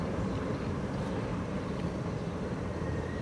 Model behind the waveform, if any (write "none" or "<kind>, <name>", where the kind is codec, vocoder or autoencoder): vocoder, BigVGAN v2